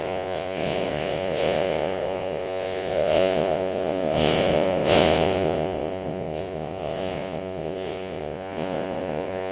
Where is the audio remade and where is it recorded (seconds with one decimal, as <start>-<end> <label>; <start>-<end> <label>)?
0.0-9.5 remade